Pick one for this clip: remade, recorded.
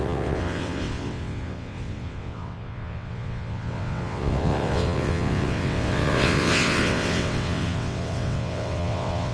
remade